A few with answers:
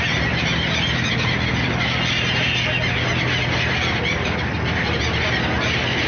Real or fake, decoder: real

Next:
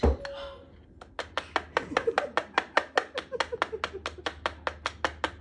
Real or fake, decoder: real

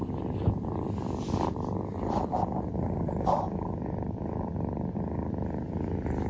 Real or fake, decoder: real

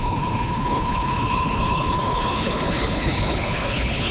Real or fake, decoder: fake, codec, HILCodec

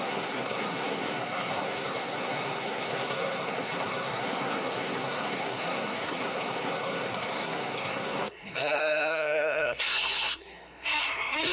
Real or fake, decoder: fake, codec, SNAC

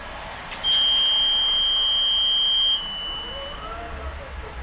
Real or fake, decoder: real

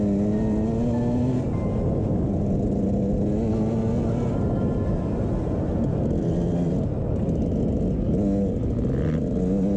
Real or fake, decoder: real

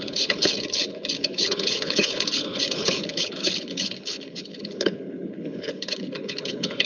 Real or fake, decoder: fake, codec, HILCodec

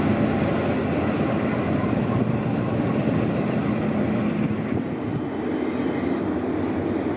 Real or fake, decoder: real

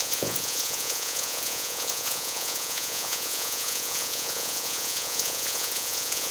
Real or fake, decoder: fake, vocoder, Vocos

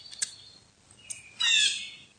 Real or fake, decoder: real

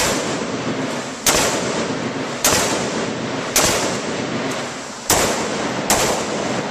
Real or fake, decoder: real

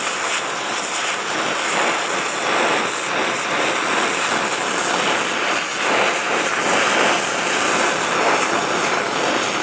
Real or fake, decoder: real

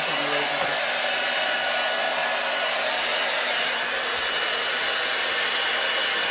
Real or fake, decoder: real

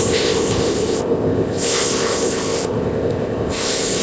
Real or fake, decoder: fake, codec, ZipCodec